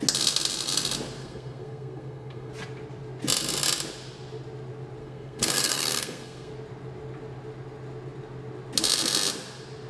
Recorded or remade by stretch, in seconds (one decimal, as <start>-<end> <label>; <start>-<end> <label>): 0.0-1.2 recorded; 1.2-2.5 remade; 2.5-5.0 recorded; 5.0-6.5 remade; 6.5-9.9 recorded